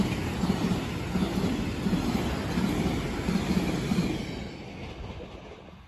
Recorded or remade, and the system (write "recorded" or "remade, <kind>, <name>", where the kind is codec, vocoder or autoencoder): recorded